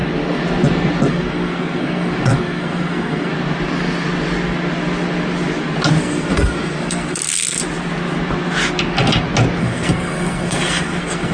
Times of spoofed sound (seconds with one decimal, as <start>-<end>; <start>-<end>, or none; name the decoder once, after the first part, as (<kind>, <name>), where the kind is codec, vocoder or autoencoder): 1.1-3.3 (codec, SNAC); 6.0-7.6; 9.6-11.3